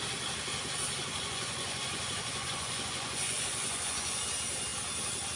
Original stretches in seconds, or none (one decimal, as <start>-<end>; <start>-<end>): 0.0-1.0; 4.2-5.4